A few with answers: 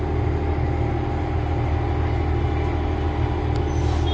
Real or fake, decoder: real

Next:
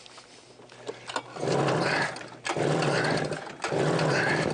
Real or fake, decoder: real